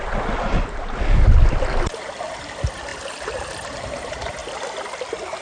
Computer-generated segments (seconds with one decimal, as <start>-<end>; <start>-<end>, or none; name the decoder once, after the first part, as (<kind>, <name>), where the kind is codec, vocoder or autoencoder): none